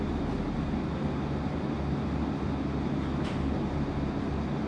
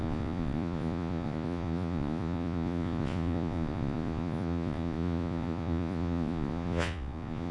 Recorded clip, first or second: first